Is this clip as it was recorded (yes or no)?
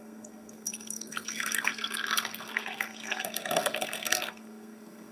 no